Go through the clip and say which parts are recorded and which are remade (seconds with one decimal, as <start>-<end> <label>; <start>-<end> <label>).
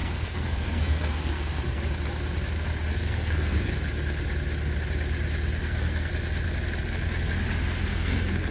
0.0-1.8 remade; 1.8-2.9 recorded; 2.9-3.7 remade; 3.7-5.6 recorded; 5.6-6.1 remade; 6.1-7.9 recorded; 7.9-8.5 remade